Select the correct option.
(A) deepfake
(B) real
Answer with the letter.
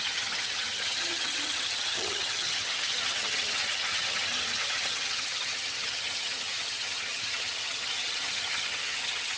A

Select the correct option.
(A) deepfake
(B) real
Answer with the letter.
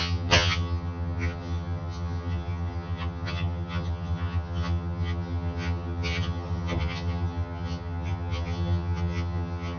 A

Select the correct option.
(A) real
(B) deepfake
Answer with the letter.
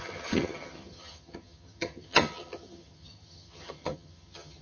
B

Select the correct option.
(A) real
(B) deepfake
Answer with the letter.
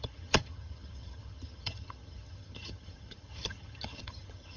B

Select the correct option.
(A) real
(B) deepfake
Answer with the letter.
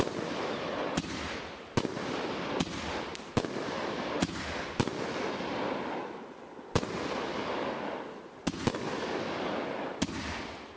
A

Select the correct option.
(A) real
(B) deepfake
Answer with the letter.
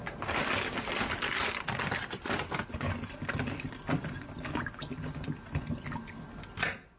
A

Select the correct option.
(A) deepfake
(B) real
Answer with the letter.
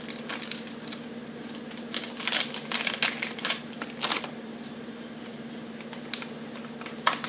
B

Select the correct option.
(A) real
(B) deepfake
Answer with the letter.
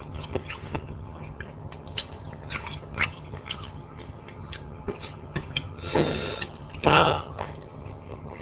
B